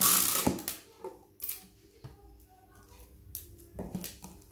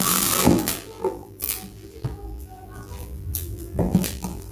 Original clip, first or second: first